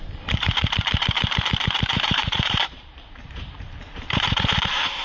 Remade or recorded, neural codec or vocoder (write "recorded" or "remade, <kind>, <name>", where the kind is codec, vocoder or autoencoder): remade, vocoder, BigVGAN v2